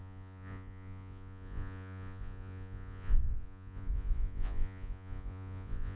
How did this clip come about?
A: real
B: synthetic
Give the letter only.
B